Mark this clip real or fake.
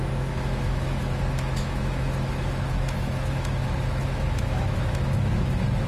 fake